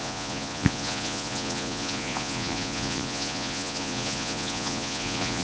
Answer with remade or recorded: remade